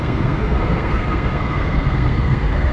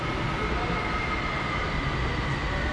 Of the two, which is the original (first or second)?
second